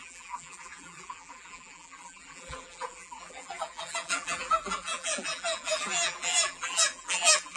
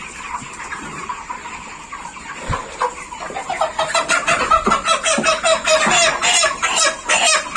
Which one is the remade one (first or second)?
first